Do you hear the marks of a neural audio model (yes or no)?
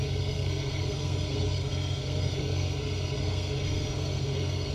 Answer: yes